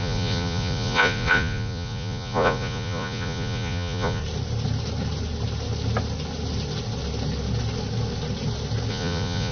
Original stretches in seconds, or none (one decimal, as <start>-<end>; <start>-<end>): 4.2-8.9